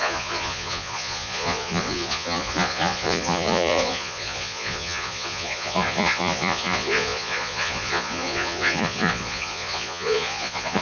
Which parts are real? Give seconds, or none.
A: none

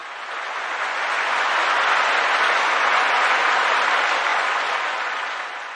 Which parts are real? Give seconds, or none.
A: 3.5-4.3